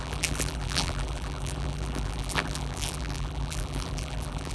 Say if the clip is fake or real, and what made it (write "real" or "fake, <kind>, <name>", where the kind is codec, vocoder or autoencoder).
fake, vocoder, BigVGAN v2